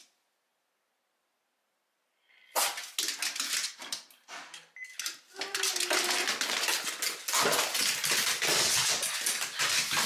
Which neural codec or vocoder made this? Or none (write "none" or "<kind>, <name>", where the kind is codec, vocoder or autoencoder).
none